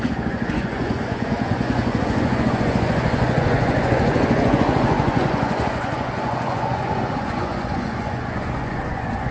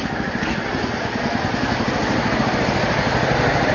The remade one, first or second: first